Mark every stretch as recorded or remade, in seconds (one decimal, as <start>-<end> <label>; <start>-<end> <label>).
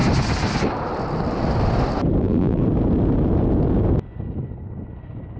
0.0-2.2 recorded; 2.2-2.6 remade; 2.6-5.4 recorded